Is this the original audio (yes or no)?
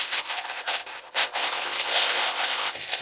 no